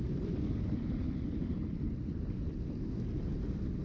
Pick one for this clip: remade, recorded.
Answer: recorded